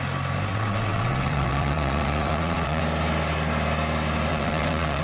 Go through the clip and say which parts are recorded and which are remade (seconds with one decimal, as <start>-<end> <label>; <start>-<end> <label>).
0.0-0.5 recorded; 0.5-2.8 remade; 2.8-4.3 recorded; 4.3-5.0 remade